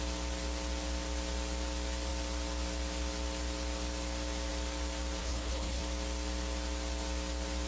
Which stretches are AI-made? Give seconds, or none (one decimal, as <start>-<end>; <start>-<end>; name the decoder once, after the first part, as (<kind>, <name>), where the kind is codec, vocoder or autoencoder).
5.2-5.8 (codec, HILCodec)